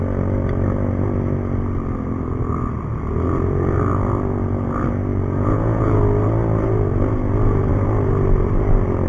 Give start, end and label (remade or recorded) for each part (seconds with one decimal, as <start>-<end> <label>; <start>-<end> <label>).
0.0-5.1 recorded; 5.1-6.0 remade; 6.0-9.1 recorded